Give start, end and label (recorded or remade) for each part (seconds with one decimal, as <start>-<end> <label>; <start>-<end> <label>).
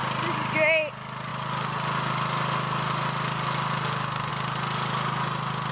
0.0-5.7 recorded